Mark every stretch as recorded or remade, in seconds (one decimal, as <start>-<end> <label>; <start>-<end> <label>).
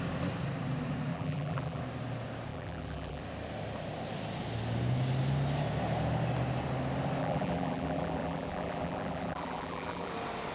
0.0-1.1 recorded; 1.1-1.8 remade; 1.8-2.5 recorded; 2.5-3.2 remade; 3.2-7.2 recorded; 7.2-10.1 remade; 10.1-10.5 recorded